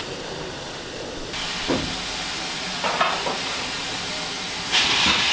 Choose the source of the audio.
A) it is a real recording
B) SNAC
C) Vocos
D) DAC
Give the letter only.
A